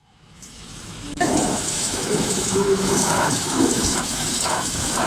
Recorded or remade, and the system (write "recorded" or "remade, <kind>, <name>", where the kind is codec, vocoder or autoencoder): remade, autoencoder, DAC-VAE